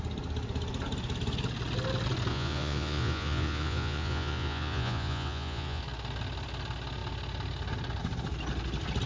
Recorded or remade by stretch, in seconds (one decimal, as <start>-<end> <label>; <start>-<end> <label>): 0.0-2.3 recorded; 2.3-5.8 remade; 5.8-9.1 recorded